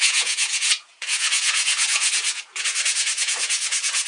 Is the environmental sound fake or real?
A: fake